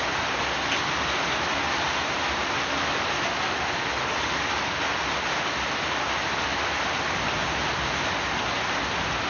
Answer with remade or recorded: recorded